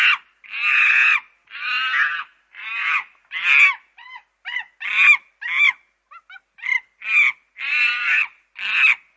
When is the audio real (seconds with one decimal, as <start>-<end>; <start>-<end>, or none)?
0.0-9.2

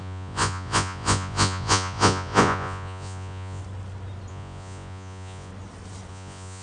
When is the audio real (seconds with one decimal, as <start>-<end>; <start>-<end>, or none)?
3.6-4.3; 5.5-6.1